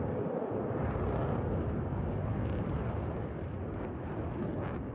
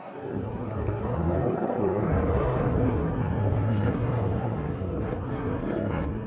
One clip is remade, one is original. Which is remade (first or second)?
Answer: second